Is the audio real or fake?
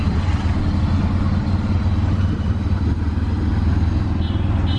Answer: real